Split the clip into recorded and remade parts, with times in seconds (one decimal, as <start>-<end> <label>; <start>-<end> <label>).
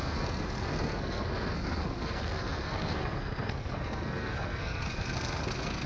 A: 0.0-5.9 remade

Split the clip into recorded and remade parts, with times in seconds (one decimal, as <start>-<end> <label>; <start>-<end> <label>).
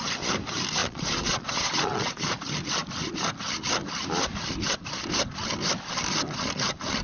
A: 0.0-0.8 recorded; 0.8-2.4 remade; 2.4-7.0 recorded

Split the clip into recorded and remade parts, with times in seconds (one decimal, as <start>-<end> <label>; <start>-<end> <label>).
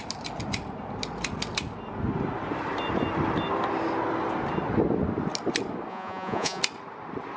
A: 0.0-5.9 recorded; 5.9-6.6 remade; 6.6-7.4 recorded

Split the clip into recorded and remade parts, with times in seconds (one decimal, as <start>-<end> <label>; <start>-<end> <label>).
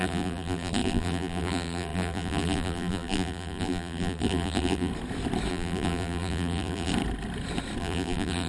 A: 0.0-4.9 remade; 4.9-5.5 recorded; 5.5-6.9 remade; 6.9-7.8 recorded; 7.8-8.5 remade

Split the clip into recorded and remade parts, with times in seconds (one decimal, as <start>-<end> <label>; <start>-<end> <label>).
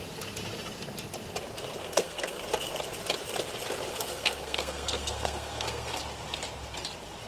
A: 0.0-1.8 recorded; 1.8-2.4 remade; 2.4-3.9 recorded; 3.9-6.0 remade; 6.0-7.3 recorded